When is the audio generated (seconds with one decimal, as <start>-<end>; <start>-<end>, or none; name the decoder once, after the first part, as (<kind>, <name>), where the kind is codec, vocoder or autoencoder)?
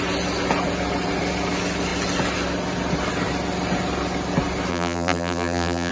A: 4.7-5.9 (vocoder, BigVGAN v2)